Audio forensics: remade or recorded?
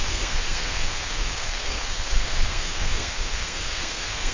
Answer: remade